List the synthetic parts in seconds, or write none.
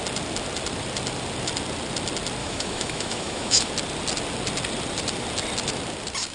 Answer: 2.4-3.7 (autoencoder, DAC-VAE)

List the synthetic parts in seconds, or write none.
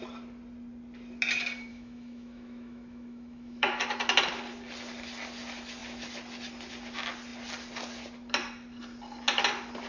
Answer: 1.7-3.8 (autoencoder, DAC-VAE)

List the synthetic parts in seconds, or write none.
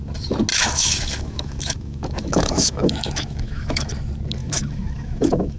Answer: 0.5-3.9 (autoencoder, DAC-VAE); 4.4-5.6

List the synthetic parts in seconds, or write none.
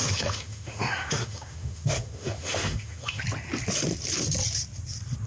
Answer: 0.0-3.2 (autoencoder, DAC-VAE)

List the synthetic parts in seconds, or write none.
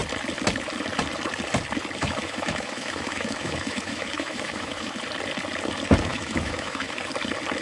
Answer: 2.0-5.0 (autoencoder, DAC-VAE); 6.1-7.0